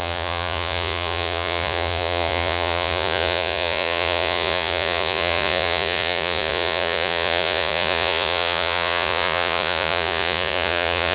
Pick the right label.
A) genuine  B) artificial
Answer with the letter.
B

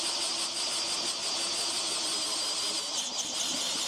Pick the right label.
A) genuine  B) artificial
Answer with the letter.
A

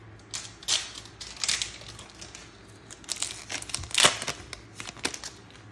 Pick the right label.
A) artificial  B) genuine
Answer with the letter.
B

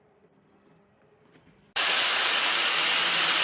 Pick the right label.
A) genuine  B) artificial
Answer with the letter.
A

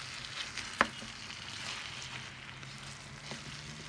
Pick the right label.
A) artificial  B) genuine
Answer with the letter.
B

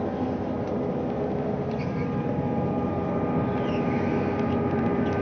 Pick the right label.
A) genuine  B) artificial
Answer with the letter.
A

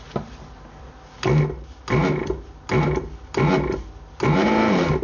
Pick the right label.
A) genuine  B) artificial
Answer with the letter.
A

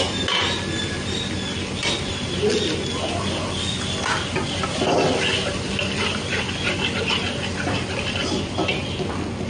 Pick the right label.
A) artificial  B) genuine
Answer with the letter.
B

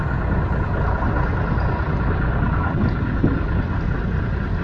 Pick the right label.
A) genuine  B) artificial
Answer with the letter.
A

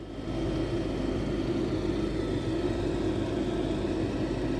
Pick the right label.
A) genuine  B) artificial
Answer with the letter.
A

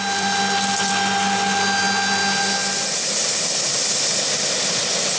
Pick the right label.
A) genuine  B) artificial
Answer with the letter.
A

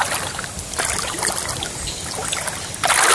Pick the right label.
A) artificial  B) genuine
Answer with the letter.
B